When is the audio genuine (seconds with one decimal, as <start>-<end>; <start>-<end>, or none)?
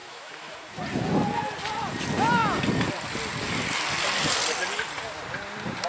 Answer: 0.5-5.9